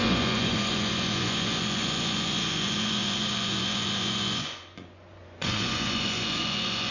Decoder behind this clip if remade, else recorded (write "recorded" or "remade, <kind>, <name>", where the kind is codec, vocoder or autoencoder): remade, vocoder, Vocos